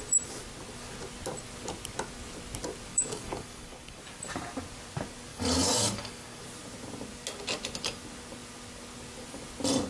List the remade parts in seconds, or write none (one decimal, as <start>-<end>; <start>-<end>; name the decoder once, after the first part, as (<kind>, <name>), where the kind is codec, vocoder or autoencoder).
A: 2.9-4.0 (codec, DAC); 5.3-6.4